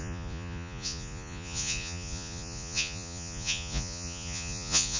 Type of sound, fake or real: fake